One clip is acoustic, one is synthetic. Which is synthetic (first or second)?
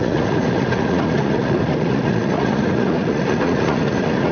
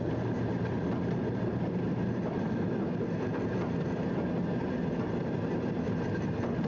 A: first